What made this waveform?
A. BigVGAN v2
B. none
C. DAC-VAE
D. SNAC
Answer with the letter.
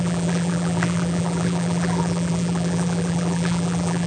A